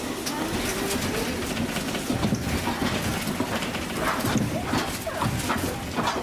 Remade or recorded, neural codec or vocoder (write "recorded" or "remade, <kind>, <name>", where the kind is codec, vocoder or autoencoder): recorded